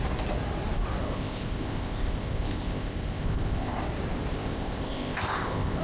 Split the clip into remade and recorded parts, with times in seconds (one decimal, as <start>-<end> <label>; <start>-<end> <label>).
0.0-1.0 recorded; 1.0-3.8 remade; 3.8-4.3 recorded; 4.3-5.8 remade